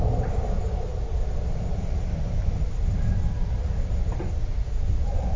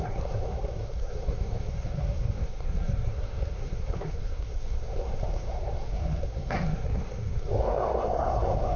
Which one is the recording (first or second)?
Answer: first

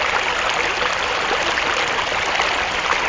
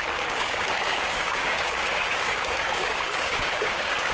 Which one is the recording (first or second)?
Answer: first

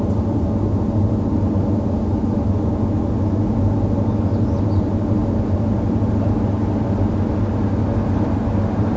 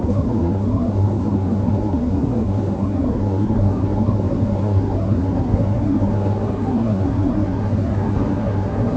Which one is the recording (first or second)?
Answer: first